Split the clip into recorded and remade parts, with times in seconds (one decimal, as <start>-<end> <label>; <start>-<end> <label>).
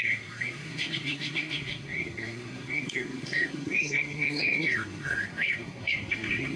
0.0-6.6 remade